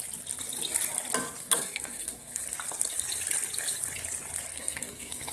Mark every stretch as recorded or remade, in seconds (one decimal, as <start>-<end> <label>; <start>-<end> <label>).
0.0-1.4 recorded; 1.4-2.4 remade; 2.4-4.5 recorded; 4.5-5.3 remade